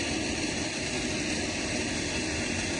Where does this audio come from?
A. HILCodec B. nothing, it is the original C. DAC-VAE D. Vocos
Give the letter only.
B